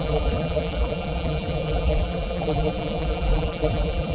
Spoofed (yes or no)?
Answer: yes